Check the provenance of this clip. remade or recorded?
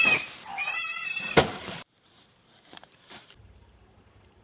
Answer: remade